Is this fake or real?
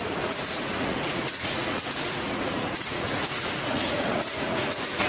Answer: fake